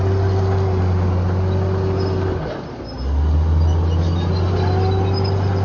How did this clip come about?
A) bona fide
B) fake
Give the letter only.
A